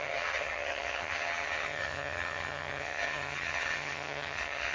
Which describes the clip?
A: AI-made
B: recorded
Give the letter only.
A